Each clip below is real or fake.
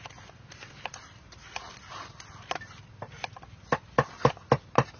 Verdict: real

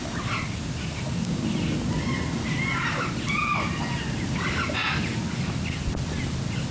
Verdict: real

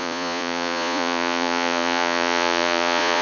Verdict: fake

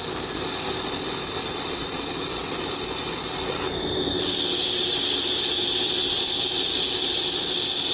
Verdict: real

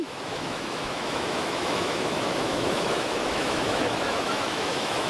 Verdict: fake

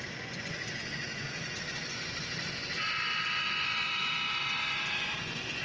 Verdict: fake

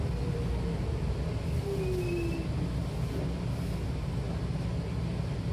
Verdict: real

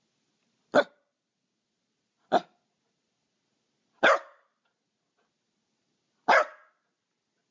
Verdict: real